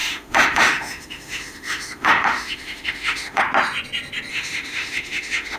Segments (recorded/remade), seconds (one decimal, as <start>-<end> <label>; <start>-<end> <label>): 0.0-3.4 remade; 3.4-4.3 recorded; 4.3-5.6 remade

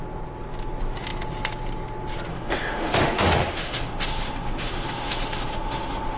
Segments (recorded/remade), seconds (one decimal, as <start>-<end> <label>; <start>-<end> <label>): 0.0-2.3 recorded; 2.3-6.2 remade

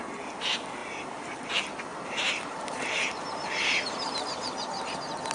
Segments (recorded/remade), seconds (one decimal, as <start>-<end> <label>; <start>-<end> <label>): 0.0-0.8 recorded; 0.8-1.5 remade; 1.5-1.9 recorded; 1.9-4.2 remade; 4.2-5.3 recorded

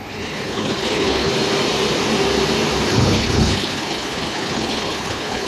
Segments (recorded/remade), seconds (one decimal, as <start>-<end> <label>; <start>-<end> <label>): 0.0-1.3 remade; 1.3-2.9 recorded; 2.9-5.5 remade

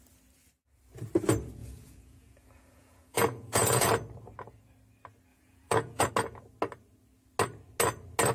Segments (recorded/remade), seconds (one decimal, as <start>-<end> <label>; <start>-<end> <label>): 0.0-1.6 recorded; 1.6-3.9 remade; 3.9-5.3 recorded; 5.3-6.1 remade; 6.1-8.3 recorded